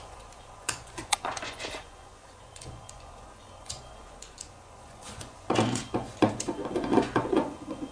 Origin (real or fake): fake